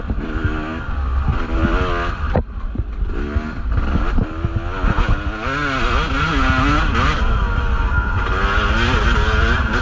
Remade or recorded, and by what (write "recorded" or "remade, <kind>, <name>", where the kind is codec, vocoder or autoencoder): recorded